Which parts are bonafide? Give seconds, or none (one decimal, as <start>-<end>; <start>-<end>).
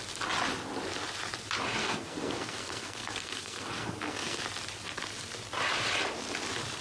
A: 0.0-1.8; 4.4-6.8